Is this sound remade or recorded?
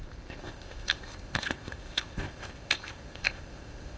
remade